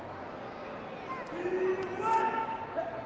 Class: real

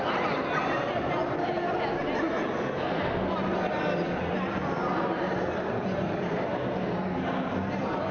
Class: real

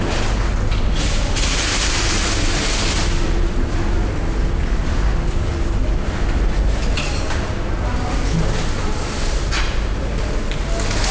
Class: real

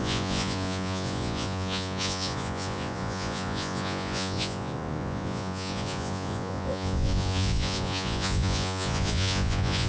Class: fake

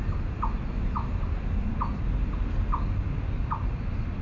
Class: real